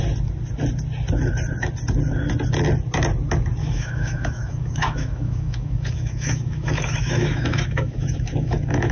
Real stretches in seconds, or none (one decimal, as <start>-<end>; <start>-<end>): 0.0-3.6